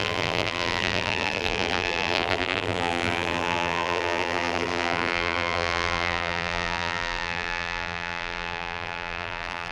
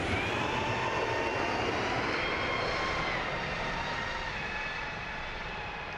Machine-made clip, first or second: first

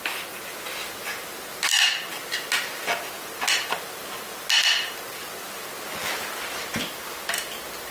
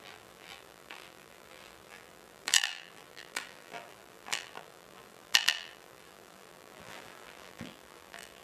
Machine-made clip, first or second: second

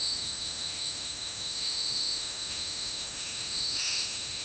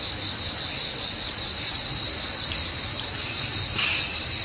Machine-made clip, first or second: first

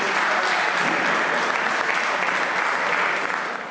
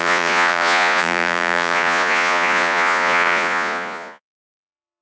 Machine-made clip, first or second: second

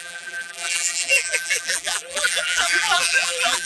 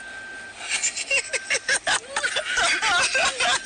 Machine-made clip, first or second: first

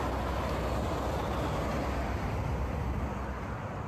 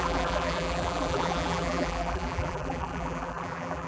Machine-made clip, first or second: second